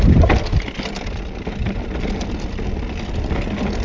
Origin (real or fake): real